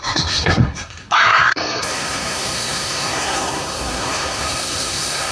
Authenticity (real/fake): fake